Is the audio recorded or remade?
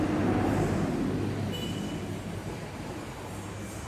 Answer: recorded